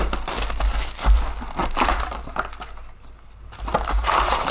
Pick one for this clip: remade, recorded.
recorded